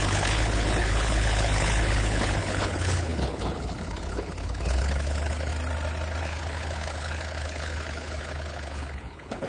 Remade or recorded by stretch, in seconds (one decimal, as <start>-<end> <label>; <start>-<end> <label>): 0.0-5.5 remade; 5.5-6.2 recorded; 6.2-9.5 remade